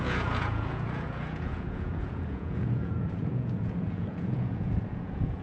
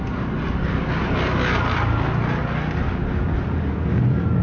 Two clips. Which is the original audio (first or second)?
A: second